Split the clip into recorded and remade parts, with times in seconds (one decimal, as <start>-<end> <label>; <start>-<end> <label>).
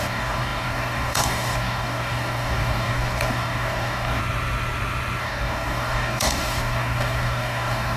0.0-4.2 remade; 4.2-5.2 recorded; 5.2-8.0 remade